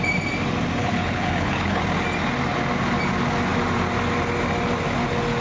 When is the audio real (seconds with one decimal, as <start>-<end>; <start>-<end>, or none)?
0.0-0.8; 1.8-5.4